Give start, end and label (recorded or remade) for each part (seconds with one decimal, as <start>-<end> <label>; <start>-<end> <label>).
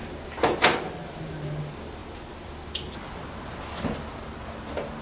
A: 0.0-5.0 recorded